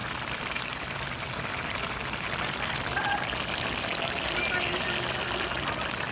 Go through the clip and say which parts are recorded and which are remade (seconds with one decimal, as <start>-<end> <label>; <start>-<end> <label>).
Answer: 0.0-3.7 remade; 3.7-6.1 recorded